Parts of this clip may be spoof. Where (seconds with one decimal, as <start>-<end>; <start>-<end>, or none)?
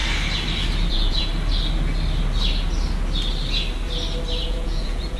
0.9-1.3; 4.4-5.2